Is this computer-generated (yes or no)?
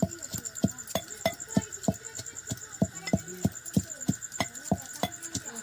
no